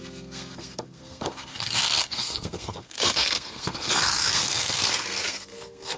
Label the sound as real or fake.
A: fake